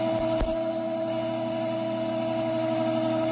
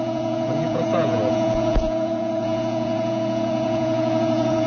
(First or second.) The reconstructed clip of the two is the second